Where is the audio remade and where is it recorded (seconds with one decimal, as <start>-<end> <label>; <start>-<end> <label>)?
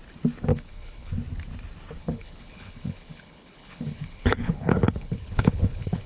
0.0-0.5 recorded; 0.5-1.1 remade; 1.1-2.0 recorded; 2.0-6.1 remade